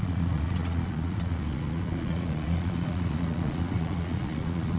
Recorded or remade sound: remade